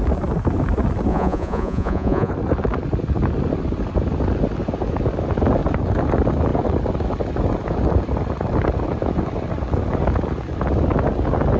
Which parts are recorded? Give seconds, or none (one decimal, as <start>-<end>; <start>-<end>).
0.0-1.1; 2.3-11.6